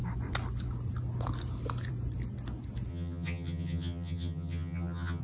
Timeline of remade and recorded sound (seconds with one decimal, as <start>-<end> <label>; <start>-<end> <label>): 0.0-2.9 recorded; 2.9-5.2 remade